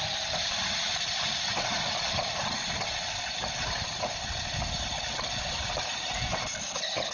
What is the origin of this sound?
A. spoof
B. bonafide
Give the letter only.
B